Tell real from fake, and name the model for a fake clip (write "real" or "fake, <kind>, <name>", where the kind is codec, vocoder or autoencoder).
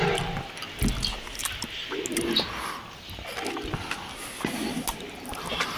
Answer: real